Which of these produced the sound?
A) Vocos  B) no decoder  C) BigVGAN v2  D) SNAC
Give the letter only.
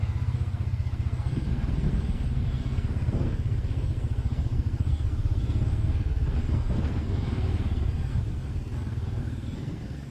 D